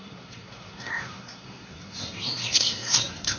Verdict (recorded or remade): remade